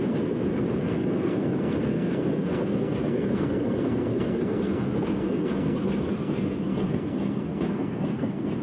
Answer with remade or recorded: remade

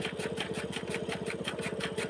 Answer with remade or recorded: recorded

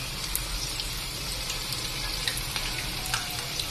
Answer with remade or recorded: remade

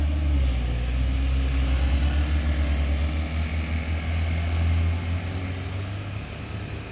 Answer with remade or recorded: recorded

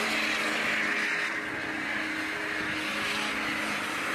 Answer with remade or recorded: recorded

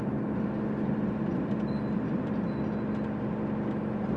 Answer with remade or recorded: recorded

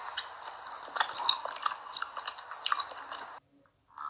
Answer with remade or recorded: recorded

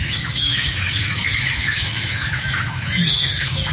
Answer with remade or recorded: remade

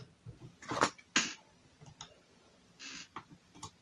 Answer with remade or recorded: recorded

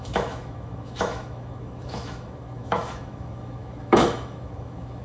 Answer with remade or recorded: remade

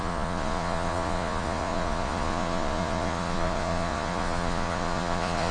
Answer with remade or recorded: remade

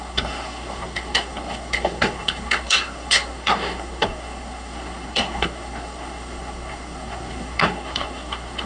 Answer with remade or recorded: remade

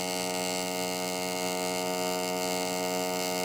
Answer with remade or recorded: recorded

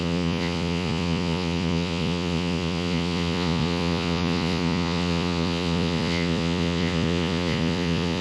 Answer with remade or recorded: remade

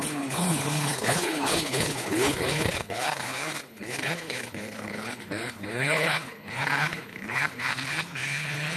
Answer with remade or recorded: remade